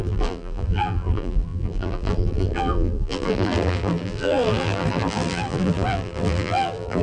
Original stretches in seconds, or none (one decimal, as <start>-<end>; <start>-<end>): none